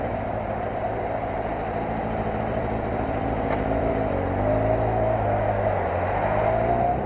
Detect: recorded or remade recorded